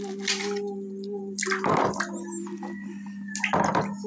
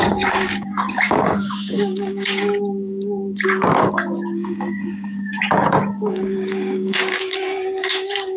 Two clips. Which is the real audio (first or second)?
first